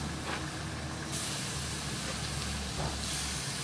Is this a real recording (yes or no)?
yes